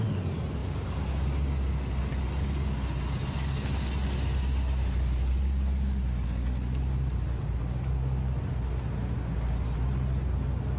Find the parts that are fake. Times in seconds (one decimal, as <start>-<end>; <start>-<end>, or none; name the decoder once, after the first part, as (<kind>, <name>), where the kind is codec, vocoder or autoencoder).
none